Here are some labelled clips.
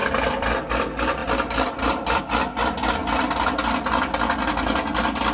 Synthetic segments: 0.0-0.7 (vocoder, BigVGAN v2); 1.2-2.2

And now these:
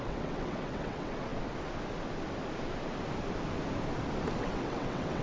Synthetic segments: 0.0-1.3 (vocoder, WaveNeXt); 4.4-5.2

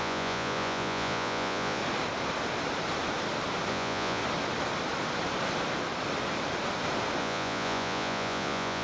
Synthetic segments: 0.0-1.8 (vocoder, Vocos); 3.7-4.2; 7.2-8.8

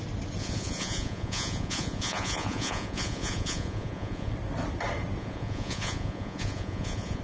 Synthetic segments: 0.4-4.3 (vocoder, Vocos); 5.2-7.2

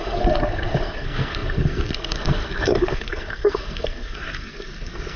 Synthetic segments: 0.0-5.2 (codec, SNAC)

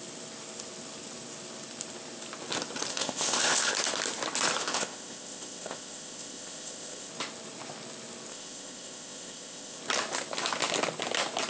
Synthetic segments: 2.9-3.7 (codec, ZipCodec); 4.6-7.1; 8.3-9.8

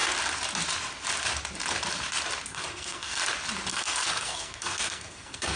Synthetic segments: 2.5-3.2 (codec, SNAC); 3.7-5.6

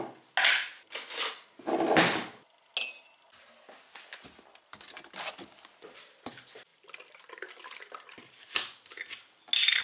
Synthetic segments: none